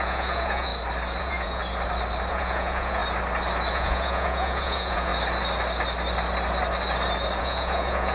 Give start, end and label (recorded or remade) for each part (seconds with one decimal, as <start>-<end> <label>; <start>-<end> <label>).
0.0-0.7 remade; 0.7-1.2 recorded; 1.2-1.6 remade; 1.6-2.3 recorded; 2.3-3.0 remade; 3.0-3.7 recorded; 3.7-5.1 remade; 5.1-7.4 recorded; 7.4-8.1 remade